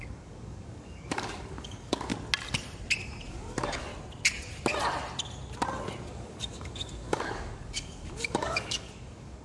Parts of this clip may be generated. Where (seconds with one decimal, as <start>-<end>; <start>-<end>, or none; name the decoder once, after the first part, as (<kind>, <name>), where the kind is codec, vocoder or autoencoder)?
0.0-2.1 (codec, DAC); 3.3-3.9; 6.1-9.4